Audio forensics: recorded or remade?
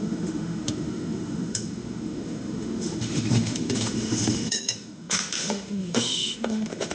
remade